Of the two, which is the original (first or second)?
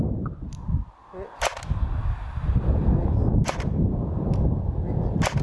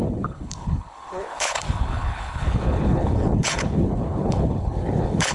first